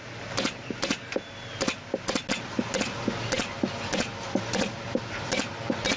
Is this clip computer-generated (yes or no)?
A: no